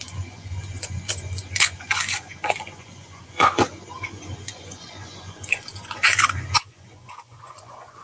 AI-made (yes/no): yes